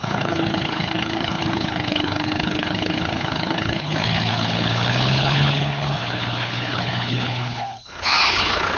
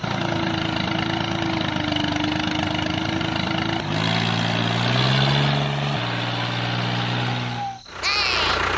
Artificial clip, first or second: first